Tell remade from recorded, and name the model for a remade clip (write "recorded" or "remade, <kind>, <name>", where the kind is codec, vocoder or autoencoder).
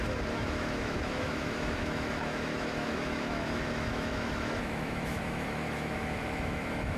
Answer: remade, autoencoder, DAC-VAE